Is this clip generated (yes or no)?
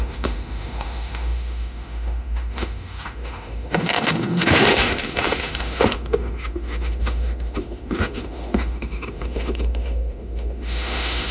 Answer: yes